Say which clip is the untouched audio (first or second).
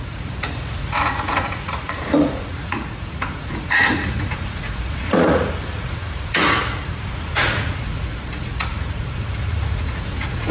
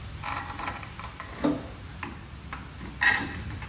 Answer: second